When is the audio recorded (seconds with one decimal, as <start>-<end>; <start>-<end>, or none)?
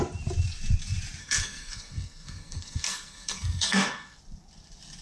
0.0-1.2; 4.2-5.0